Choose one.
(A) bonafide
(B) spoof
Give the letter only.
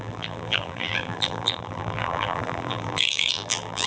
B